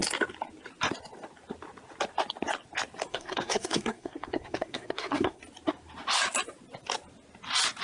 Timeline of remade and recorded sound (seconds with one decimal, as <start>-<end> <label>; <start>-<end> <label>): 0.0-3.1 recorded; 3.1-5.4 remade; 5.4-7.8 recorded